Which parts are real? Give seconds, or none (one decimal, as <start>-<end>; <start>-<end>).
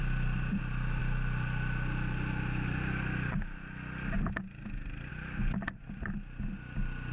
0.0-7.1